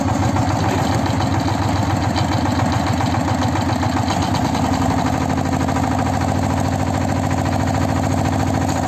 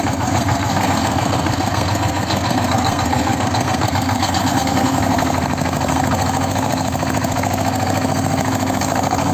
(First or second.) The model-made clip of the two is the second